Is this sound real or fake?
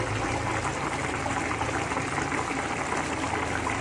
real